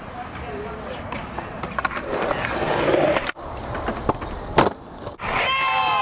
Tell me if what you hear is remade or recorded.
remade